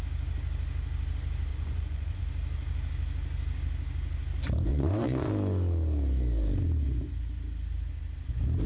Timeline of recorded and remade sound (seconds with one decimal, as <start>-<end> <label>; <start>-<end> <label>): 0.0-1.5 recorded; 1.5-2.2 remade; 2.2-4.7 recorded; 4.7-5.3 remade; 5.3-8.7 recorded